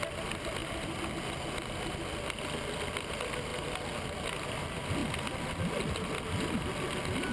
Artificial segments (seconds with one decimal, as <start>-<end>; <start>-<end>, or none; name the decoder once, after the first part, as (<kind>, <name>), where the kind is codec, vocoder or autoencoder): none